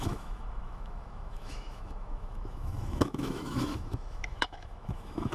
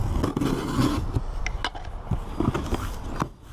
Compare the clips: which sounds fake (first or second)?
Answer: first